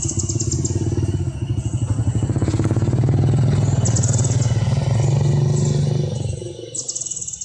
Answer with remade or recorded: recorded